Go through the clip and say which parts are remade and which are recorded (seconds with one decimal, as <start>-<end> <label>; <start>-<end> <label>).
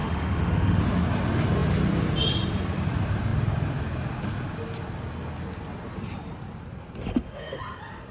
0.0-0.8 remade; 0.8-7.1 recorded; 7.1-7.6 remade; 7.6-8.1 recorded